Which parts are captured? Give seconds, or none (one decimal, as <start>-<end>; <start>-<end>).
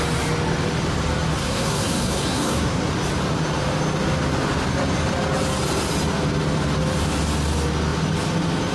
0.0-1.3; 2.9-8.7